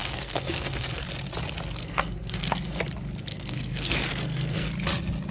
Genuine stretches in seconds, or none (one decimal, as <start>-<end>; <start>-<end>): 1.0-1.8; 2.8-3.3; 4.7-5.3

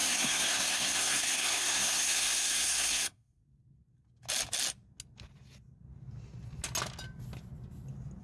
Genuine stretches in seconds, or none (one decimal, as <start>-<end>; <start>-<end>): 3.4-8.2

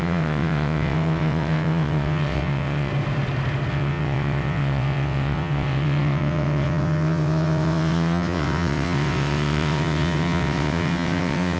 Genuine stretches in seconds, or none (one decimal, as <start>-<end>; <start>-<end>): 2.9-3.7

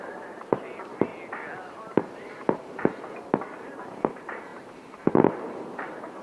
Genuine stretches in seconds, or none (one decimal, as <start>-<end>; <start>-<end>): 1.1-1.7

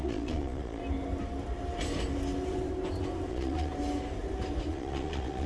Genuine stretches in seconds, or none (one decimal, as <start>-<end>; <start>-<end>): 0.8-3.3; 3.7-4.7

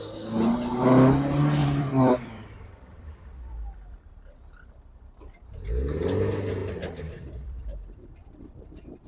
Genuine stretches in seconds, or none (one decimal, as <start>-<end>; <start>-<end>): 0.0-1.6; 4.1-6.6

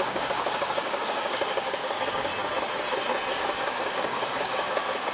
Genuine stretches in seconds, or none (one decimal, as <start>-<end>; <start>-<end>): 2.3-3.3